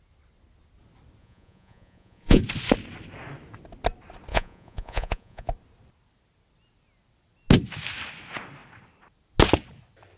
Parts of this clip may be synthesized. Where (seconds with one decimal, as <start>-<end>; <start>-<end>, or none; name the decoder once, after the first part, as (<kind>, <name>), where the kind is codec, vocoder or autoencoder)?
1.2-2.4 (vocoder, Vocos); 4.3-5.5